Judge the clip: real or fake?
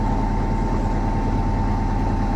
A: real